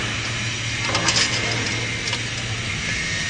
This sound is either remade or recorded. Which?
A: recorded